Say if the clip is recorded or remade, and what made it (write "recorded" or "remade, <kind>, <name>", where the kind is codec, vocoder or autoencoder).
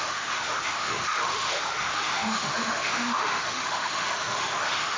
remade, autoencoder, DAC-VAE